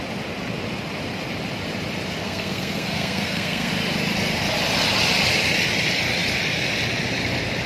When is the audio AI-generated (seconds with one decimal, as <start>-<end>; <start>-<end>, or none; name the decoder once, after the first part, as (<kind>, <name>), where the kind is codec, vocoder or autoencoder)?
2.2-3.7 (codec, SNAC)